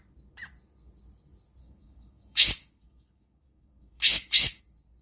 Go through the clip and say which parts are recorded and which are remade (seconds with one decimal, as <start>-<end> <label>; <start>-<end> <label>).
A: 0.0-1.6 recorded; 1.6-4.6 remade; 4.6-5.0 recorded